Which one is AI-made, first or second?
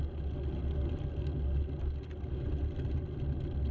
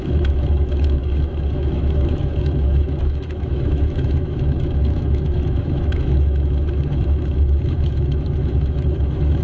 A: second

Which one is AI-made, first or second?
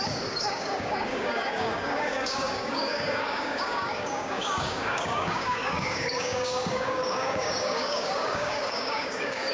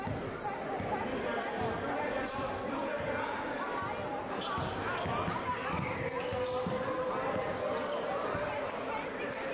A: first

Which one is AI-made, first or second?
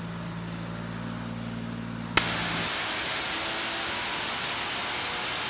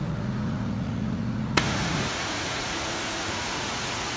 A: second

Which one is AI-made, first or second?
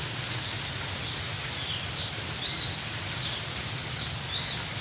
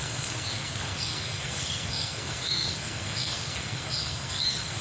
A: second